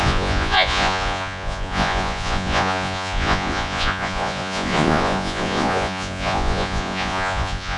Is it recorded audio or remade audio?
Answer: remade